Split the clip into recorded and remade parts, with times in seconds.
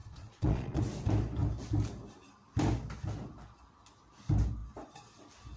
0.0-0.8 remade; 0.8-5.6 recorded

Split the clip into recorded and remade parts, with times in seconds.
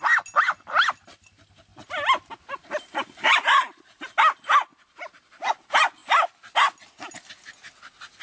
0.0-8.2 recorded